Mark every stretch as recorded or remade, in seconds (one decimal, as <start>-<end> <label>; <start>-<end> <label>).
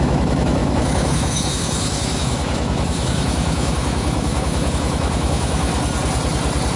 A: 0.0-5.7 remade; 5.7-6.8 recorded